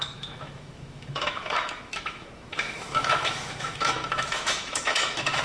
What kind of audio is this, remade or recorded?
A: remade